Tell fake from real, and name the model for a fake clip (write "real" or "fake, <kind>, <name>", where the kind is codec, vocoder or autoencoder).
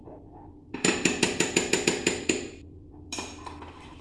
fake, vocoder, BigVGAN v2